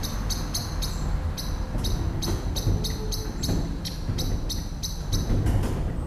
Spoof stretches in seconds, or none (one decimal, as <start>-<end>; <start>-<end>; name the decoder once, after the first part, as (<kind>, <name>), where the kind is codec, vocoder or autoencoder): none